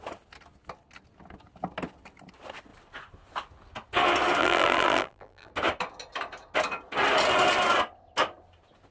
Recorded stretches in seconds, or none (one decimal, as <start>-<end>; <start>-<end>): 0.0-4.4; 5.5-8.9